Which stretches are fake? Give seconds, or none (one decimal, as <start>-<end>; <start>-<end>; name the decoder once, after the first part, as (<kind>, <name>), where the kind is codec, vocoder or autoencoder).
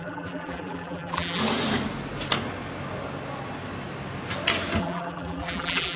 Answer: 0.0-1.4 (vocoder, BigVGAN v2); 4.8-6.0